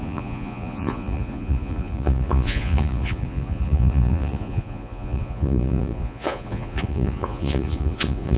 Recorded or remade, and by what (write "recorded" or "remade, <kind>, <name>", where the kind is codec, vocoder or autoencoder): remade, vocoder, Vocos